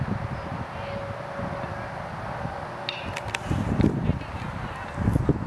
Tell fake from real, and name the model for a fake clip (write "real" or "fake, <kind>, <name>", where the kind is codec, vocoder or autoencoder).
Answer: real